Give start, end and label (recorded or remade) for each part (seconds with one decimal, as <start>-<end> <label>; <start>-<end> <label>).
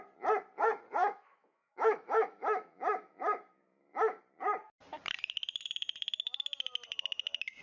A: 0.0-1.0 recorded; 1.0-4.2 remade; 4.2-7.6 recorded